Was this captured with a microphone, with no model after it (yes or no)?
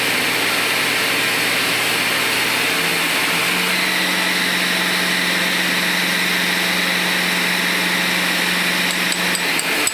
yes